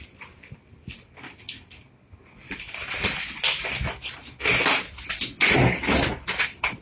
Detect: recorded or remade recorded